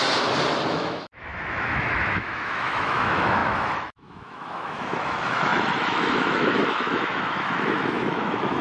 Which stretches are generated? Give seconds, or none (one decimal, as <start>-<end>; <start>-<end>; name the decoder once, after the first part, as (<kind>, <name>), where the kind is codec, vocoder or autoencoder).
0.7-8.6 (autoencoder, DAC-VAE)